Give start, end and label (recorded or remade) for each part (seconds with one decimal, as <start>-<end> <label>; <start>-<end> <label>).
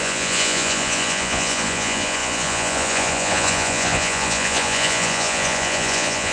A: 0.0-6.3 remade